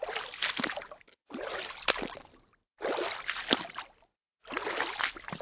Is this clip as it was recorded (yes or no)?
yes